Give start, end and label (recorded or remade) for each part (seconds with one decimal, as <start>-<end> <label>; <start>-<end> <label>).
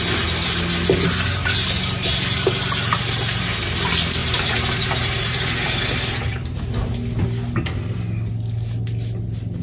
0.0-4.2 recorded; 4.2-6.6 remade; 6.6-9.6 recorded